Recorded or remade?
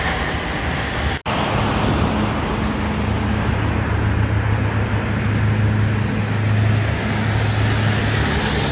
recorded